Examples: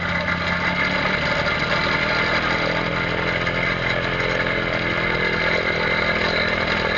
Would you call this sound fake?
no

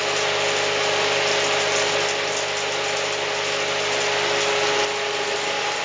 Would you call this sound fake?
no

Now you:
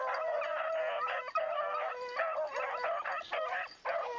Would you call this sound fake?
no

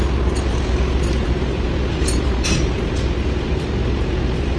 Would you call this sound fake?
no